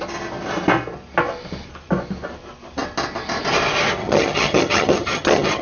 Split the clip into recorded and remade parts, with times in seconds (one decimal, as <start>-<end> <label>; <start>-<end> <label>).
0.0-4.0 recorded; 4.0-5.6 remade